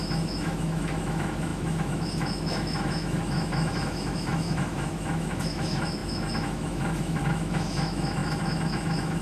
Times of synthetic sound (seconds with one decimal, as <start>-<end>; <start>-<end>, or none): 0.0-9.2